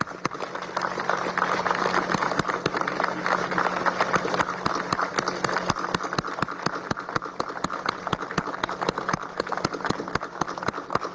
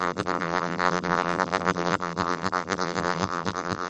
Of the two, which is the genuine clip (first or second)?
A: first